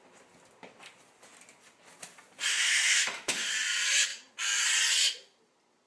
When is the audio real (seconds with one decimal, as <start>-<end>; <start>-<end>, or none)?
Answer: 0.0-2.5; 3.5-5.9